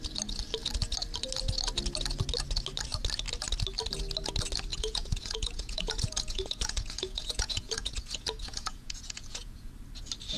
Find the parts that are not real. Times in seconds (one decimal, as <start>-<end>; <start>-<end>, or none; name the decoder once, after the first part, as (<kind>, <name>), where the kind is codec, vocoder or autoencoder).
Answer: 4.7-9.7 (vocoder, Vocos)